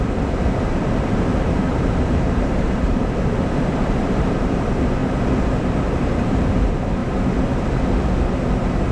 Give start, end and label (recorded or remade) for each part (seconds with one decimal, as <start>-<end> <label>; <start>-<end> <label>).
0.0-5.0 remade; 5.0-6.1 recorded; 6.1-7.0 remade; 7.0-8.5 recorded; 8.5-8.9 remade